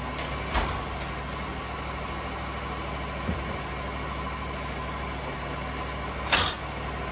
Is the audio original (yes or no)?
yes